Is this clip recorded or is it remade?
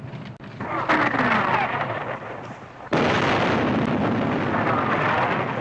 recorded